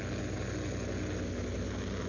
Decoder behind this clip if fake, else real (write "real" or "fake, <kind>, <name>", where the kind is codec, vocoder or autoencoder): real